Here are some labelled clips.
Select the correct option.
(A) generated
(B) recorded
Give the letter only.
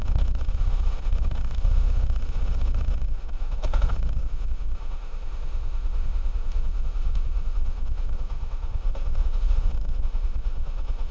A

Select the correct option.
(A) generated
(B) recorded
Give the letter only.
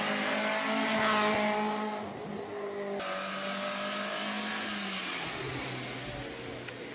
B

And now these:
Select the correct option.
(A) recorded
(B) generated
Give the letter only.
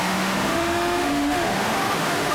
B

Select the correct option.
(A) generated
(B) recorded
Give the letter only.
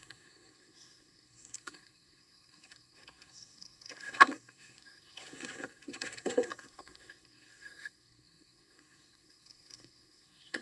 A